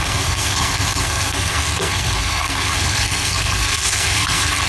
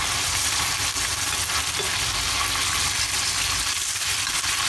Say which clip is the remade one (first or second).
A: first